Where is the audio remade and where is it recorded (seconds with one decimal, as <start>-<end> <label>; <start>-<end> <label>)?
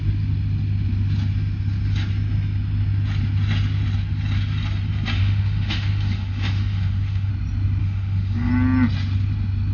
0.0-5.2 recorded; 5.2-7.3 remade; 7.3-7.8 recorded; 7.8-8.5 remade; 8.5-9.7 recorded